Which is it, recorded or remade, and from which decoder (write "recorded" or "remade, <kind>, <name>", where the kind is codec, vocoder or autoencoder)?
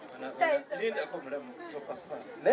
recorded